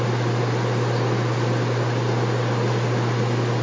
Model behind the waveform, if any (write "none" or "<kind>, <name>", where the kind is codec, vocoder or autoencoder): none